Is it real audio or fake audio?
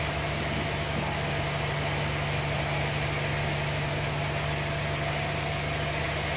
real